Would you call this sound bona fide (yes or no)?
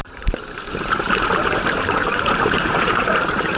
no